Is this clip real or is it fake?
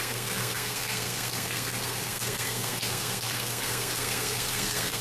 fake